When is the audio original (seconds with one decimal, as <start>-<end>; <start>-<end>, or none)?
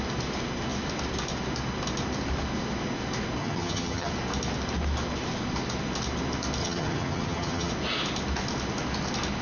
0.0-3.4; 4.1-6.6; 7.7-9.4